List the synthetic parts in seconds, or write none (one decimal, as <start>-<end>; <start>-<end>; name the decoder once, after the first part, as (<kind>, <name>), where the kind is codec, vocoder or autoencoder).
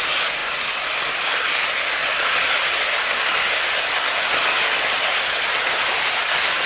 none